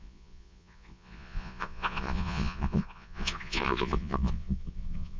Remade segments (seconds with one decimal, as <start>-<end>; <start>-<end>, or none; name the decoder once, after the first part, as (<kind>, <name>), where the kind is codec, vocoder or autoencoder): 0.0-5.2 (vocoder, Vocos)

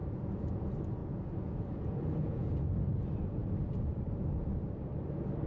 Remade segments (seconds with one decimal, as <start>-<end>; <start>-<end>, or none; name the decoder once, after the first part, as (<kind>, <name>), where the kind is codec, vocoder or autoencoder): 0.0-0.6 (vocoder, Vocos); 1.0-2.5

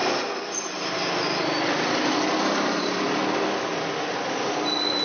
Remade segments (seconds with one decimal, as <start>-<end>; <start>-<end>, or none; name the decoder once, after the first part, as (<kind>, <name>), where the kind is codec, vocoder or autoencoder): none

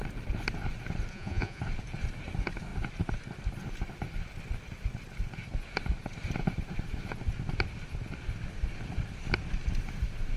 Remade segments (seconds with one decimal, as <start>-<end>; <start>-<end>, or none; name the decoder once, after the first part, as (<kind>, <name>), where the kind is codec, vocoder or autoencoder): 1.1-1.6 (vocoder, Vocos)

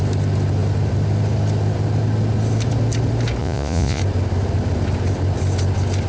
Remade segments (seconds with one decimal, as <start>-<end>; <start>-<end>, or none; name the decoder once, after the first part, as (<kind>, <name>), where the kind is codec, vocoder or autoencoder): 3.4-4.0 (vocoder, Vocos)

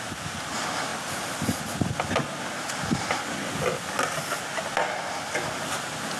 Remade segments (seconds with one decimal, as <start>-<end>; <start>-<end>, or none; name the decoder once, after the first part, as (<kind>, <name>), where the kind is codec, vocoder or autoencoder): none

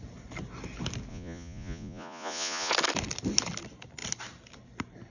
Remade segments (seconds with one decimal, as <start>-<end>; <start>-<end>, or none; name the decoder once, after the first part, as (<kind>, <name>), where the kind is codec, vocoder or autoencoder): 1.1-2.7 (vocoder, Vocos)